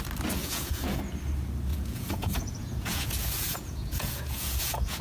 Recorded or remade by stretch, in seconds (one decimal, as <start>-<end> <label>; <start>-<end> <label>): 0.0-0.4 recorded; 0.4-1.0 remade; 1.0-1.7 recorded; 1.7-5.0 remade